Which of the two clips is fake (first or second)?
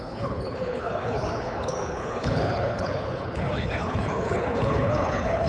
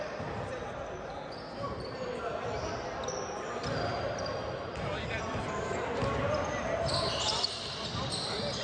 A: first